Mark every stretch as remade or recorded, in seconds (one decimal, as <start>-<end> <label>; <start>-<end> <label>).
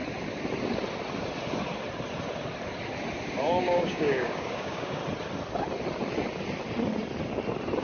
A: 0.0-3.6 recorded; 3.6-5.0 remade; 5.0-7.8 recorded